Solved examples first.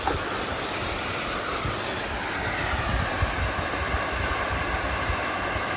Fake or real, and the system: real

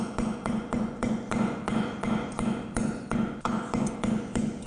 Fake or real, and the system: fake, vocoder, Vocos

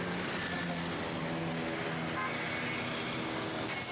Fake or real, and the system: real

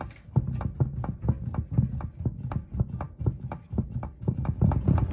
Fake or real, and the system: real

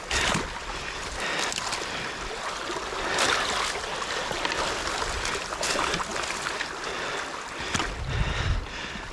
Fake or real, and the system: real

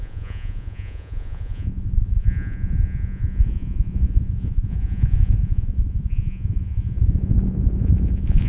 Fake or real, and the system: fake, vocoder, Vocos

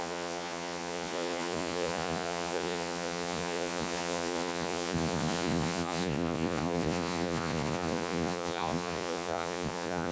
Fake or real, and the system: fake, vocoder, Vocos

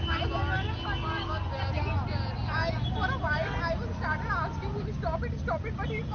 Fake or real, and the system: real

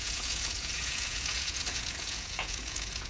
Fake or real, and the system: fake, vocoder, Vocos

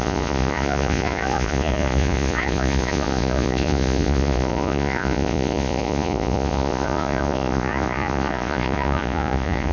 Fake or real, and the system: fake, vocoder, Vocos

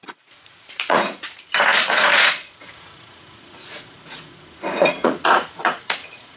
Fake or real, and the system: fake, vocoder, Vocos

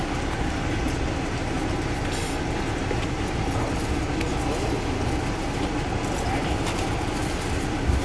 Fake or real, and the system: real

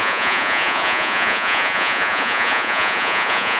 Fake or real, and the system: fake, vocoder, Vocos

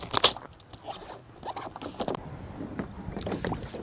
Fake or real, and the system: real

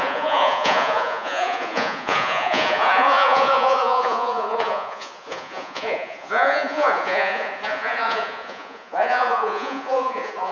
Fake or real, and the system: fake, vocoder, Vocos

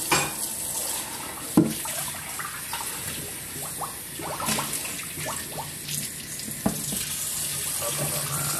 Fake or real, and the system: real